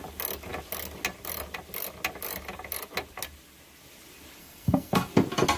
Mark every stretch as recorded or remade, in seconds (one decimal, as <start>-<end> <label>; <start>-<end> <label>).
0.0-4.4 recorded; 4.4-5.1 remade; 5.1-5.6 recorded